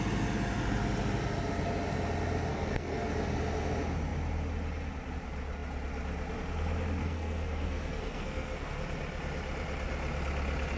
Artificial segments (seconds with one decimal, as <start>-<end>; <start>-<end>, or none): 2.5-3.1; 7.0-8.8